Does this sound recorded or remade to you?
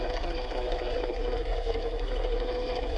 remade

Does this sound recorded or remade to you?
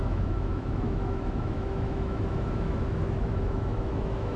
remade